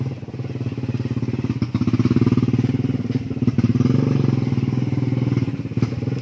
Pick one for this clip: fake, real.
real